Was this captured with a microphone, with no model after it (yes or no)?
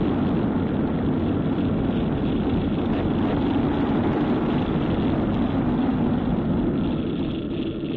yes